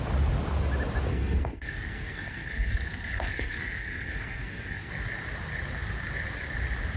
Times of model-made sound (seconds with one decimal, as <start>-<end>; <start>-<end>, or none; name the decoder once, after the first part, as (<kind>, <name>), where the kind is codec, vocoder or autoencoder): 1.1-4.9 (codec, SNAC)

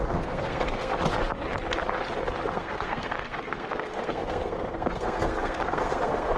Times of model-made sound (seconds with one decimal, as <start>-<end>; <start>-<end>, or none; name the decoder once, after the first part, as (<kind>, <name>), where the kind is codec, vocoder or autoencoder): 0.0-0.9 (codec, SNAC); 2.5-6.4

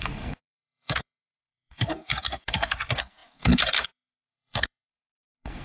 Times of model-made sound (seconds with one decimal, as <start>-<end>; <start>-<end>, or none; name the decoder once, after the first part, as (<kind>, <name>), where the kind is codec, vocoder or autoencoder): 0.0-5.6 (codec, SNAC)

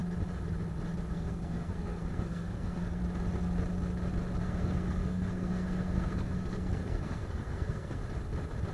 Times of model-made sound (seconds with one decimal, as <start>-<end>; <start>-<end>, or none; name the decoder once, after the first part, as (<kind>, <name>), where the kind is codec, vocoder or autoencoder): 1.1-3.0 (codec, SNAC); 4.4-8.0

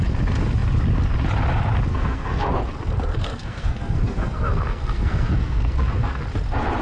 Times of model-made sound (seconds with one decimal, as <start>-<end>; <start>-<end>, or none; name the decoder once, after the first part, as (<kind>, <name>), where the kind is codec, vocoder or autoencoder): 1.9-2.5 (codec, SNAC); 3.1-6.2

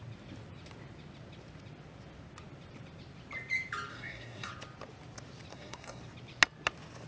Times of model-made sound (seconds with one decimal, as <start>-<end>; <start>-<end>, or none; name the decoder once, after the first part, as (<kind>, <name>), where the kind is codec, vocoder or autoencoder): 3.9-4.5 (codec, SNAC); 5.5-6.0

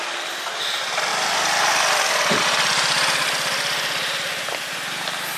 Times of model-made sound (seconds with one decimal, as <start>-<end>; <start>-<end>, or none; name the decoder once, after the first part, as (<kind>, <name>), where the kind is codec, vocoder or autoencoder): none

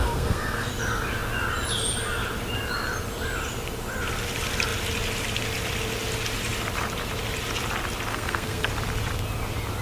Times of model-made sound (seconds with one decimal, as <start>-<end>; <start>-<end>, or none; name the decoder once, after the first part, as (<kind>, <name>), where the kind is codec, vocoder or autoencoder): 0.0-0.7 (codec, SNAC); 8.1-8.7